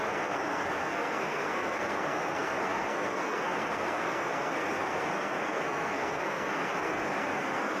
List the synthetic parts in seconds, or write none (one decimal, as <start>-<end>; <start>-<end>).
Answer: 0.0-7.8